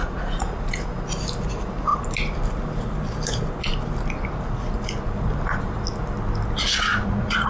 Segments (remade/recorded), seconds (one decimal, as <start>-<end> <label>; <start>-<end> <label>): 0.0-0.6 remade; 0.6-6.9 recorded; 6.9-7.5 remade